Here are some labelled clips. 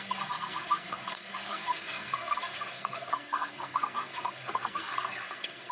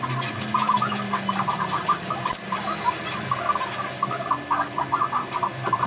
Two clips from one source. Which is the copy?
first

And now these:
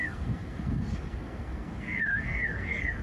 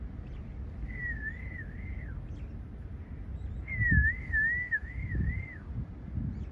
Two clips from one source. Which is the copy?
first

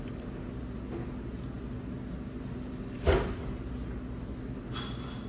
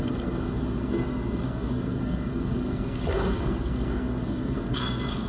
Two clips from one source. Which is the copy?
second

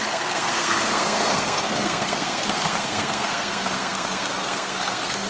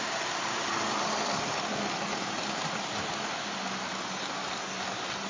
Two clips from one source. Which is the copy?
first